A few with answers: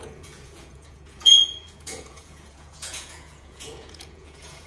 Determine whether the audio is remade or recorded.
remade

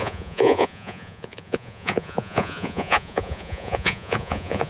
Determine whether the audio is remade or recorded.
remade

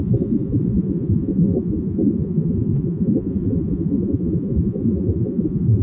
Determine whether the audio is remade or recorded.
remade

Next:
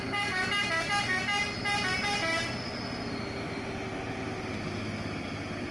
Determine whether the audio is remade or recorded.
recorded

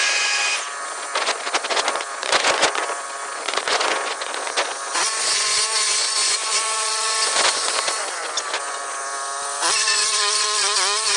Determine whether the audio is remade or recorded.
remade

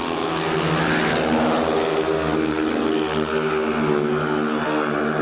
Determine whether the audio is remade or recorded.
recorded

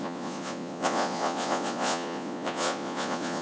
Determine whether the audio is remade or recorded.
remade